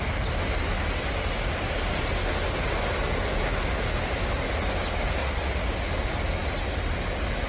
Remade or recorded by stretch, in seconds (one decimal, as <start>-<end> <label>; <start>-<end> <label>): 0.0-5.2 recorded; 5.2-5.7 remade; 5.7-7.5 recorded